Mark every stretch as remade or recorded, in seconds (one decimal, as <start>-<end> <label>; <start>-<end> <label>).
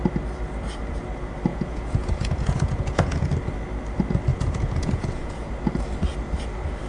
0.0-1.5 recorded; 1.5-3.3 remade; 3.3-4.3 recorded; 4.3-5.5 remade; 5.5-6.9 recorded